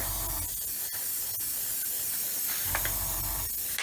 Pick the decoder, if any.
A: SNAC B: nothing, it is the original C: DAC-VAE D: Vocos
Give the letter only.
B